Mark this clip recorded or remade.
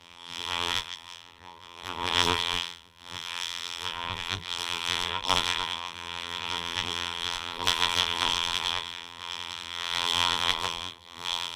remade